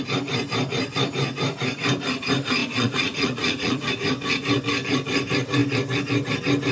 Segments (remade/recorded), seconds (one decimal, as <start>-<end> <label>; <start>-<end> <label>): 0.0-2.6 recorded; 2.6-3.9 remade; 3.9-6.7 recorded